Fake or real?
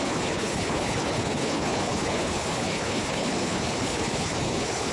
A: fake